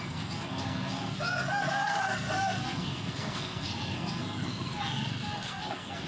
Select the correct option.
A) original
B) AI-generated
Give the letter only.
B